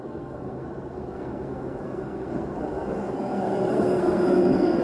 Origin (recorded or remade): remade